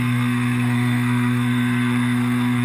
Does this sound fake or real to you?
fake